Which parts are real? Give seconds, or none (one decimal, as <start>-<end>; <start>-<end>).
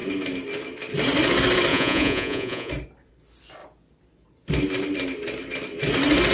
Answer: 0.0-1.7; 2.7-6.3